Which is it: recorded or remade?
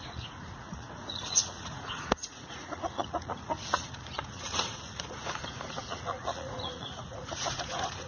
remade